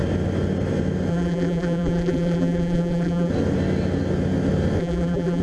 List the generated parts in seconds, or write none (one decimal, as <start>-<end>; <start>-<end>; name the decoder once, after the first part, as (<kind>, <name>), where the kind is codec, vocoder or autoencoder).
1.1-3.3 (vocoder, BigVGAN v2); 4.8-5.4